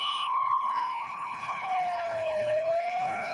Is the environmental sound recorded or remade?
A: remade